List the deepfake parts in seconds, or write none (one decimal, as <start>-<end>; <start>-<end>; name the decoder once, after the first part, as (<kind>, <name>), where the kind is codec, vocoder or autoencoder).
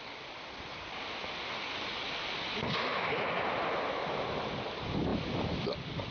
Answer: none